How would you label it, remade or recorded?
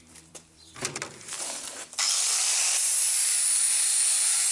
remade